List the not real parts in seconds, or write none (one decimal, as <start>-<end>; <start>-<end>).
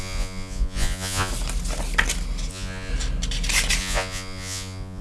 0.0-1.3; 2.5-2.9; 3.8-5.0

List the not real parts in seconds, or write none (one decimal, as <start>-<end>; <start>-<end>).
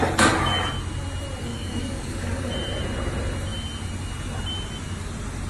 1.5-2.5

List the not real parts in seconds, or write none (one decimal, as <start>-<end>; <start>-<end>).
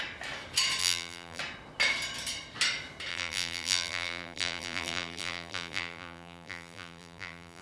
0.8-1.4; 3.1-7.6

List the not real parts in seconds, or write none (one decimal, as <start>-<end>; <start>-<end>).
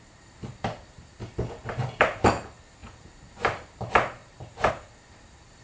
0.0-5.6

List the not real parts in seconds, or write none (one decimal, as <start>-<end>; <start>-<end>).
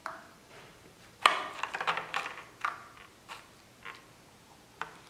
0.0-1.7